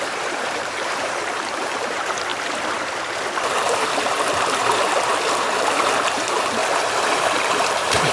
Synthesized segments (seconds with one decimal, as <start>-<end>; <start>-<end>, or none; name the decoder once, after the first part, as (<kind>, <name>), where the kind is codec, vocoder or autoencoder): 0.0-2.3 (vocoder, BigVGAN v2); 6.0-6.6; 7.1-8.1